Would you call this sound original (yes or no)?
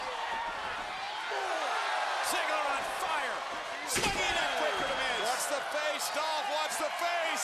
yes